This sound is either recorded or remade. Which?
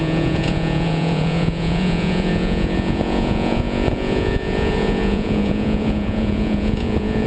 remade